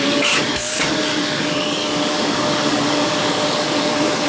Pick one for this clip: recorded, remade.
remade